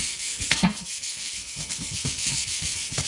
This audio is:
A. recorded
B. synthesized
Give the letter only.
B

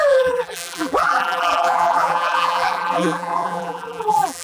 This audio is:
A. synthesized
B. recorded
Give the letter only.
A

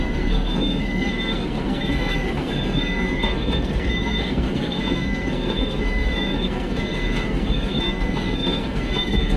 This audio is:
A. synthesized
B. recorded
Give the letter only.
A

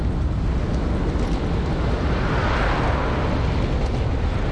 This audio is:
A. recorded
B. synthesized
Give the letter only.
A